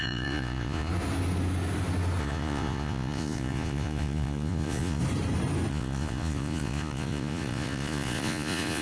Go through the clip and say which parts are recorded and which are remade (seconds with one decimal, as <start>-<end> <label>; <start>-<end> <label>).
0.0-0.9 remade; 0.9-2.2 recorded; 2.2-5.0 remade; 5.0-5.7 recorded; 5.7-8.8 remade